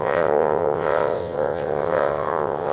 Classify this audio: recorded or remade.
remade